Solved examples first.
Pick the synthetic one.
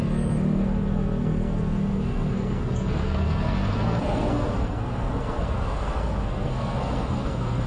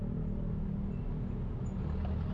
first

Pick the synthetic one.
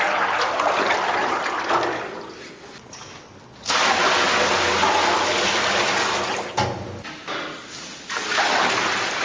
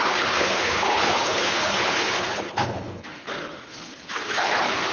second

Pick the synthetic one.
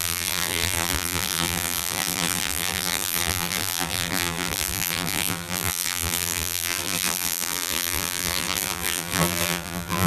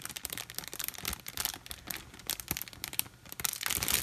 first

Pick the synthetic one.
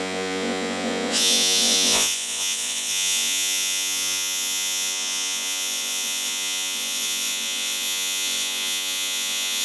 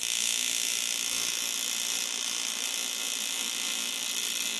first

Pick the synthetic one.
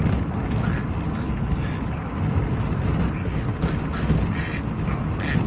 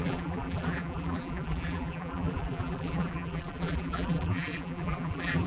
second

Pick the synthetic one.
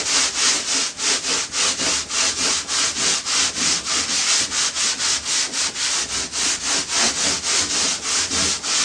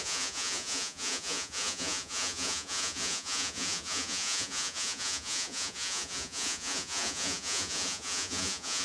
second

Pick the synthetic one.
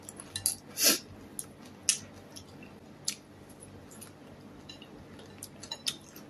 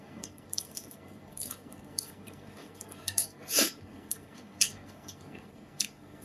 second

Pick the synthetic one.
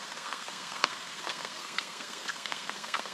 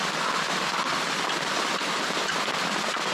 first